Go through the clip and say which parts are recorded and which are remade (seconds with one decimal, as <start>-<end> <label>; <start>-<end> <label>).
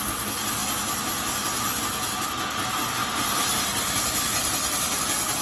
0.0-5.4 recorded